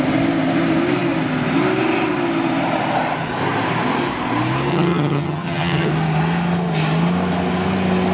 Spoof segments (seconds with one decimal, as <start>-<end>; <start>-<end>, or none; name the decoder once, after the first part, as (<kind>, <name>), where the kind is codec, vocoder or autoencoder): 4.7-5.9 (vocoder, HiFi-GAN)